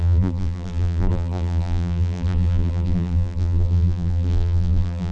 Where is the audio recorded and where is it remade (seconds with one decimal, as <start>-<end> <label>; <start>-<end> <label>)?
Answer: 0.0-5.1 remade